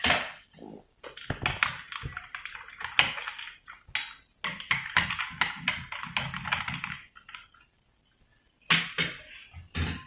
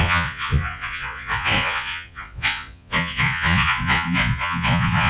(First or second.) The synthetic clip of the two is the second